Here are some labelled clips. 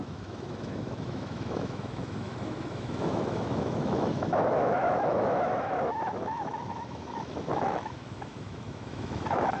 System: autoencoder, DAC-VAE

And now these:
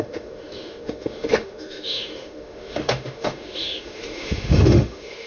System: autoencoder, DAC-VAE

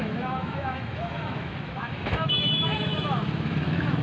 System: autoencoder, DAC-VAE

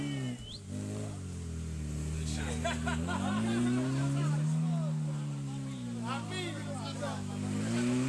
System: none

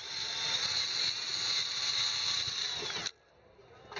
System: none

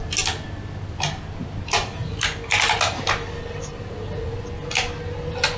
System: none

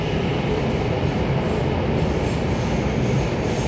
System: none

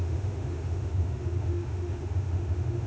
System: autoencoder, DAC-VAE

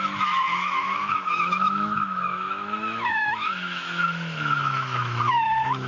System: autoencoder, DAC-VAE